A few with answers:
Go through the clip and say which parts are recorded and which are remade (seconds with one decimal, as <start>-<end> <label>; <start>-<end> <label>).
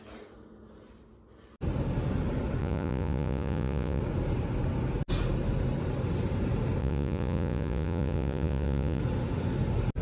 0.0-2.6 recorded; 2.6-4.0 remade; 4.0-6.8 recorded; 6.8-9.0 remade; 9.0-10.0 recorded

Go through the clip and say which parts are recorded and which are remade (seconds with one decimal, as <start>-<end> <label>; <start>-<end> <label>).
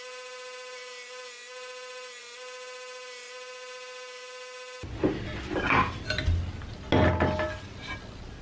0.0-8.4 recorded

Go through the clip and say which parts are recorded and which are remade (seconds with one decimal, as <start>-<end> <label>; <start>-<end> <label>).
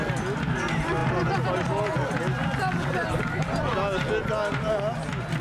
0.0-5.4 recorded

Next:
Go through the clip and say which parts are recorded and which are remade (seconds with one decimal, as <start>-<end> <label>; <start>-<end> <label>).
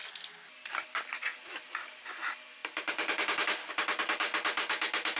0.0-5.2 recorded